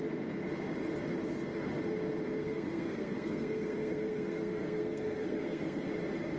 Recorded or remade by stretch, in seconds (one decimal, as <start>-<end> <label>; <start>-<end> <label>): 0.0-2.4 recorded; 2.4-5.9 remade; 5.9-6.4 recorded